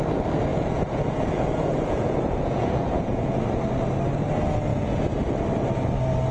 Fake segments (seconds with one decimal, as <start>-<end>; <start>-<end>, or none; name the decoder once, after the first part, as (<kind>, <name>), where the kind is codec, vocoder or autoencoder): 0.5-3.4 (vocoder, Vocos); 4.7-5.3